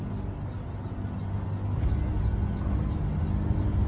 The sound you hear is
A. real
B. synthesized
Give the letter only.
A